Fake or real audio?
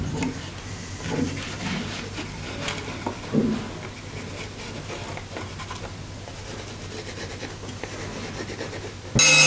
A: real